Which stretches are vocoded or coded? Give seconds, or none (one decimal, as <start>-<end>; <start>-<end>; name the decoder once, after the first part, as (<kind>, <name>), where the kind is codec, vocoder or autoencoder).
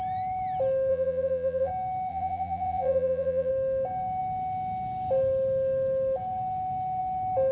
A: 0.9-1.7 (vocoder, Vocos); 2.1-3.5